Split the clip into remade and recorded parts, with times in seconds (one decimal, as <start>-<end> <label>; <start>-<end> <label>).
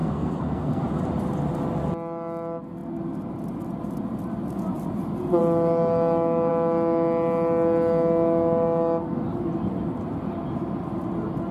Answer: 0.0-0.8 remade; 0.8-11.5 recorded